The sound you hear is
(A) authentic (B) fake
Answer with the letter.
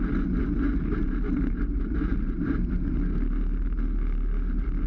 A